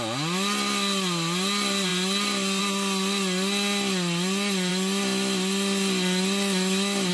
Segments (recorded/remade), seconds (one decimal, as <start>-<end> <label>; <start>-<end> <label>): 0.0-7.1 recorded